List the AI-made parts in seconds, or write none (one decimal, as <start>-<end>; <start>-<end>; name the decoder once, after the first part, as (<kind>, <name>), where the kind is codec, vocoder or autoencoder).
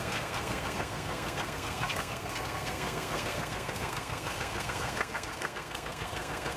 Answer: 0.0-6.6 (codec, SNAC)